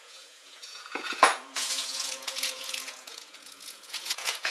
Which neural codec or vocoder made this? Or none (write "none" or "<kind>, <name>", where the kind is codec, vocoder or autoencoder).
vocoder, Vocos